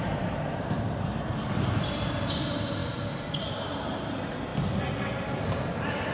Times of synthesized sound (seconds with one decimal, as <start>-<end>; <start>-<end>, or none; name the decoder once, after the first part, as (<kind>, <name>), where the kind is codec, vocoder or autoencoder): 0.0-2.8 (vocoder, BigVGAN v2); 3.4-4.5; 5.1-6.1